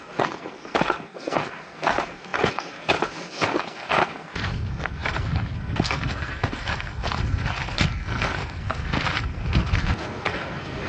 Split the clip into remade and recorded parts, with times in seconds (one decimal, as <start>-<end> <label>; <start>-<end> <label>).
0.0-10.9 remade